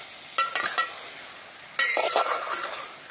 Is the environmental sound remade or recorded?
recorded